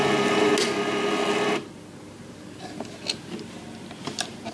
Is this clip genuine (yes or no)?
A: yes